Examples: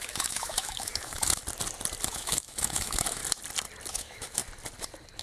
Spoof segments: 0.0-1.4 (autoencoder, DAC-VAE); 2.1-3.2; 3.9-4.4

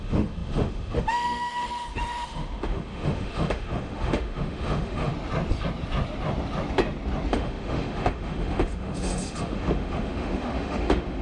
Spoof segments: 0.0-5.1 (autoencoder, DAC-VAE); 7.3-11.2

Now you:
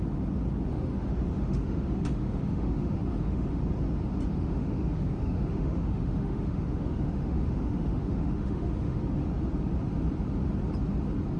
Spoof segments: 0.7-3.6 (autoencoder, DAC-VAE); 4.3-9.0

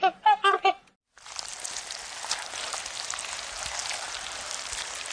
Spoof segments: none